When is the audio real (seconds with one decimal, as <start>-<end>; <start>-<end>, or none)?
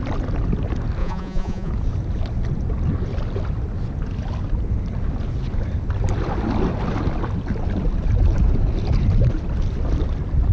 0.0-1.0; 1.7-10.5